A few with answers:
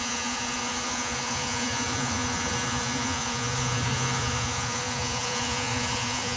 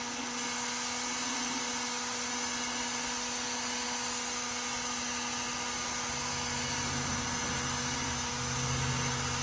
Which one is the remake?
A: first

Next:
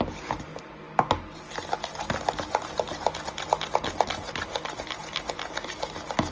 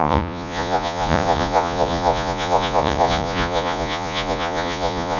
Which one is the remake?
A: second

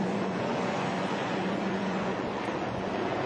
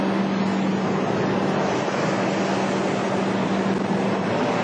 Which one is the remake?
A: first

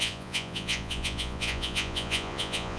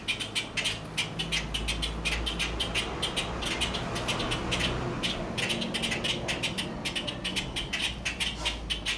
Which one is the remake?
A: first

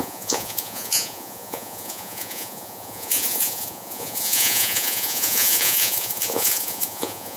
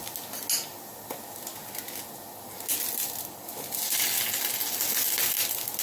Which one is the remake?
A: first